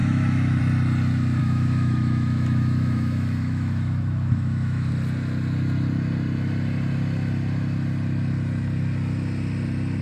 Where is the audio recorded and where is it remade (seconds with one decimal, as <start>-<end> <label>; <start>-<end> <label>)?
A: 0.0-0.6 remade; 0.6-1.4 recorded; 1.4-4.9 remade; 4.9-10.0 recorded